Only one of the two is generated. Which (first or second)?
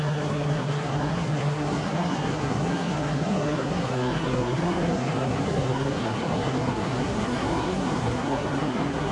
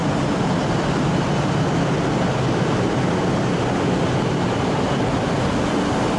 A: first